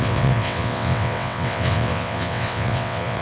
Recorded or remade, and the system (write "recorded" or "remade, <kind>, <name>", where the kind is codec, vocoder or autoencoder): remade, vocoder, WaveNeXt